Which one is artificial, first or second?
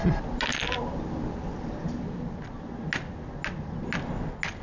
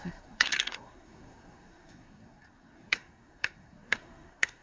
second